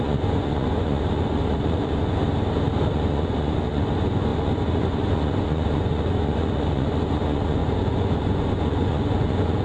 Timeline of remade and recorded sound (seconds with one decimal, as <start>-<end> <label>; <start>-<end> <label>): 0.0-2.2 remade; 2.2-2.9 recorded; 2.9-9.6 remade